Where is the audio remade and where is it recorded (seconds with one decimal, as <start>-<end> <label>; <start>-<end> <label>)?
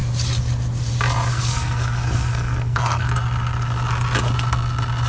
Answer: 0.0-1.3 recorded; 1.3-3.1 remade; 3.1-5.1 recorded